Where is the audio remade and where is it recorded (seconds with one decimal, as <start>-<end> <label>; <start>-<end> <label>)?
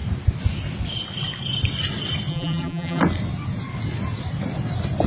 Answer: 0.0-2.3 recorded; 2.3-3.0 remade; 3.0-5.1 recorded